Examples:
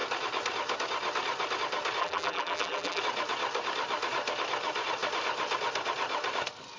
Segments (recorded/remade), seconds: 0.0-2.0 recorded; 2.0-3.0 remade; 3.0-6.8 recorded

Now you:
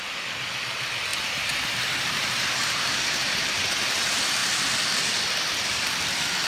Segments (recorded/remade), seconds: 0.0-1.1 recorded; 1.1-3.9 remade; 3.9-6.5 recorded

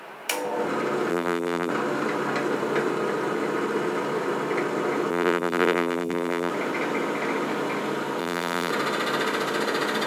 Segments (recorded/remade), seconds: 0.0-1.1 recorded; 1.1-1.7 remade; 1.7-5.1 recorded; 5.1-6.5 remade; 6.5-8.2 recorded; 8.2-8.7 remade; 8.7-10.1 recorded

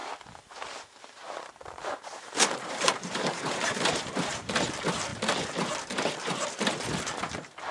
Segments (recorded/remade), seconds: 0.0-4.6 remade; 4.6-7.7 recorded